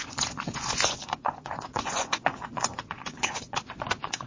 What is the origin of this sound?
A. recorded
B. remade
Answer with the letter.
B